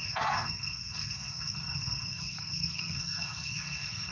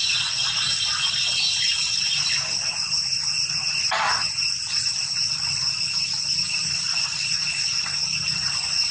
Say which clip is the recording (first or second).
second